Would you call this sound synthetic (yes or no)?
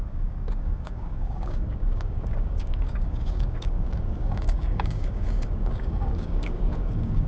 yes